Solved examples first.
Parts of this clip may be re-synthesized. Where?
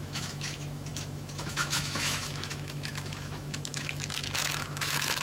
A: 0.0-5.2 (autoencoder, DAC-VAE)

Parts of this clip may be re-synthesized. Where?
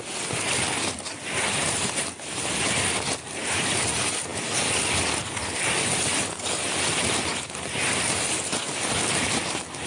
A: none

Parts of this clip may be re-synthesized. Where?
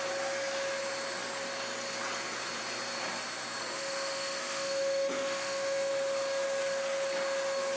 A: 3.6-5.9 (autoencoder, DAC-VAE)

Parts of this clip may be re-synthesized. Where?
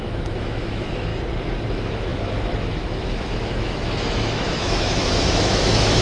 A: 0.0-1.1 (autoencoder, DAC-VAE); 1.7-6.0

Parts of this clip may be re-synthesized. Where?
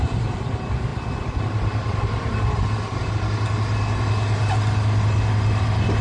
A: none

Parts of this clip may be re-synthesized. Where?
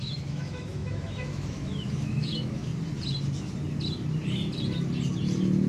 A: 0.0-2.7 (autoencoder, DAC-VAE)